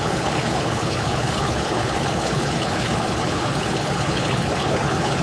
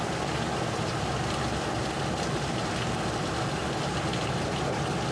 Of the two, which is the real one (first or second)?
second